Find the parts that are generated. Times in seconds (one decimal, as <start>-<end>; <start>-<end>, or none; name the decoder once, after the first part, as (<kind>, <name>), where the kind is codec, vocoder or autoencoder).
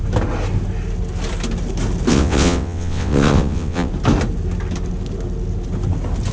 2.1-3.9 (vocoder, WaveNeXt)